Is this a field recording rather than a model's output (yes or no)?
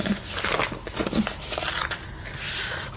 yes